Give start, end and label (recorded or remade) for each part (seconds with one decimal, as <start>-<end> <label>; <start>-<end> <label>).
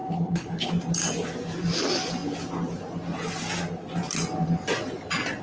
0.0-0.7 remade; 0.7-5.4 recorded